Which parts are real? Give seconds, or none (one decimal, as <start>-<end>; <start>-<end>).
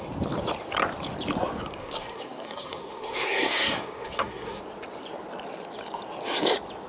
0.0-1.8; 4.6-6.9